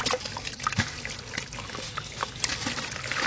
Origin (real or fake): real